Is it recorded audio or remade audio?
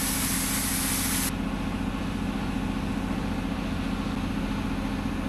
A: recorded